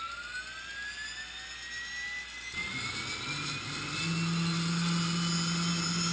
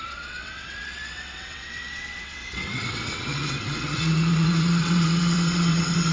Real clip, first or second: first